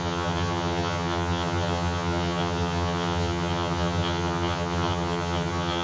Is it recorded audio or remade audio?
remade